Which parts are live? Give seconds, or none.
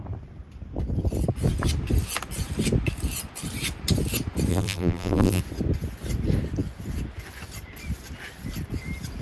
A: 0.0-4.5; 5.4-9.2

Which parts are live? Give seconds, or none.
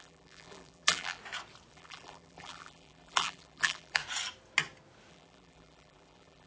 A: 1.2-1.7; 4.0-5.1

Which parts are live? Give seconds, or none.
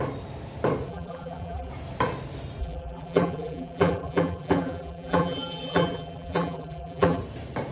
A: 0.0-0.9; 1.7-2.6; 7.2-7.7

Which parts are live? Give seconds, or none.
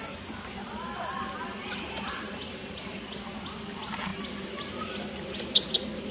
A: 0.0-6.1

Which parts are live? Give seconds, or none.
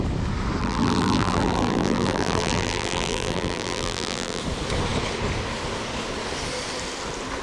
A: 0.0-0.6; 4.4-7.4